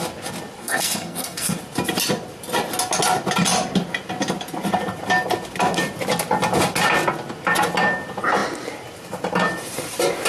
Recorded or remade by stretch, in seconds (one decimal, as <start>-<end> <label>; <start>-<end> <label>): 0.0-0.6 recorded; 0.6-1.6 remade; 1.6-10.3 recorded